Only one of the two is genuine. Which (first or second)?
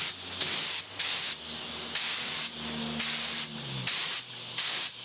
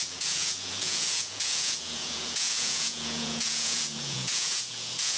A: first